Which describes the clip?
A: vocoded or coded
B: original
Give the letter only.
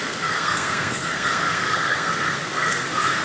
A